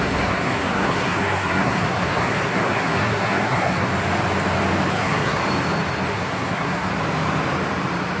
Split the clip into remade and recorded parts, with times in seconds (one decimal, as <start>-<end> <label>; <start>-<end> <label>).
0.0-3.9 remade; 3.9-4.9 recorded; 4.9-5.4 remade; 5.4-6.1 recorded; 6.1-6.9 remade; 6.9-8.2 recorded